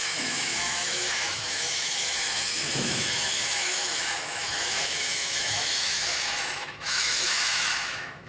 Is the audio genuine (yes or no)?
no